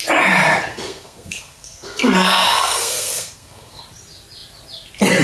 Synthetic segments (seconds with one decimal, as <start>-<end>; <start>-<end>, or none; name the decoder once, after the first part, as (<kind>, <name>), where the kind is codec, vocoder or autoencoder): 0.7-3.8 (codec, SNAC)